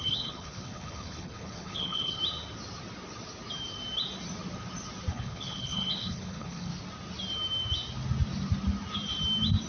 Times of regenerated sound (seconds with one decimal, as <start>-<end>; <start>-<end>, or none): 0.0-2.2; 5.1-6.7